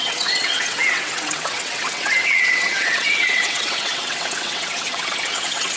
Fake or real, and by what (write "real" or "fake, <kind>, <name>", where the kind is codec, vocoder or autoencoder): fake, vocoder, WaveNeXt